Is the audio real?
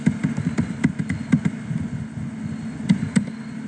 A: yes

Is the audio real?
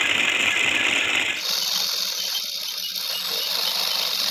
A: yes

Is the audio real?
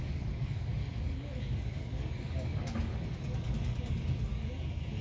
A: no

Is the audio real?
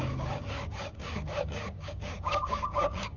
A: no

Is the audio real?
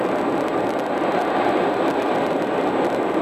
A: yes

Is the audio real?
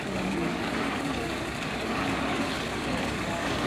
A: no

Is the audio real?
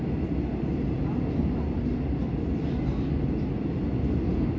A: yes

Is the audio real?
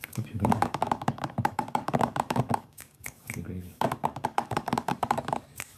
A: no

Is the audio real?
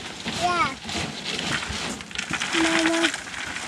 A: yes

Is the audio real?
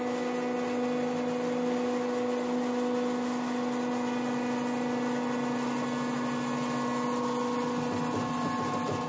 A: yes